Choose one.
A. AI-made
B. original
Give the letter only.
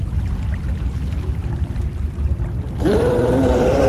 B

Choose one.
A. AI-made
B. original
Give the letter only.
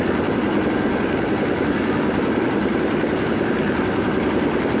B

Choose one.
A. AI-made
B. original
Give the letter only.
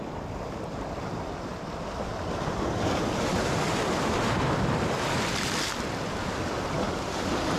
B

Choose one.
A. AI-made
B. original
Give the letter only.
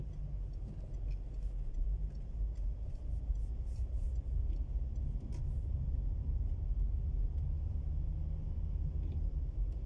B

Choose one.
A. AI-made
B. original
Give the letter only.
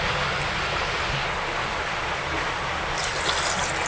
B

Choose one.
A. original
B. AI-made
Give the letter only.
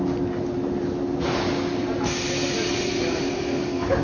A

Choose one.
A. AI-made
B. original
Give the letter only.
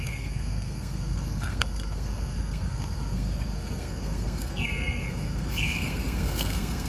A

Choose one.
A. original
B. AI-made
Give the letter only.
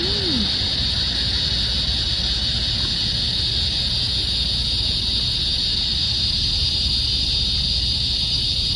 A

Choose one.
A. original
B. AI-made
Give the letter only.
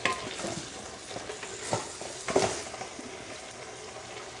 A